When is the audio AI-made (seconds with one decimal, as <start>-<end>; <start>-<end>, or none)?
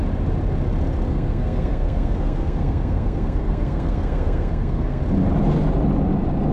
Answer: 1.1-5.0